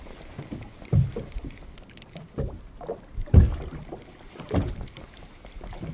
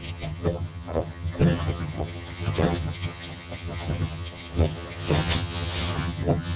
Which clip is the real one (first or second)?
first